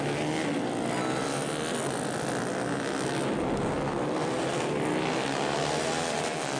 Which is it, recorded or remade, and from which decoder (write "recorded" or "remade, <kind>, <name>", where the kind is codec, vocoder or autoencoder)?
recorded